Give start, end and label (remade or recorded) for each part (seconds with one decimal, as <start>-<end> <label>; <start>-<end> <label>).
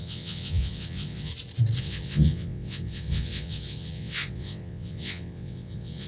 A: 0.0-1.3 remade; 1.3-1.8 recorded; 1.8-6.1 remade